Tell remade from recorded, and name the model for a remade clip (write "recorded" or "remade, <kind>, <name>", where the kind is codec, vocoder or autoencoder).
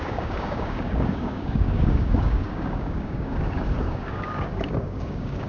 remade, codec, DAC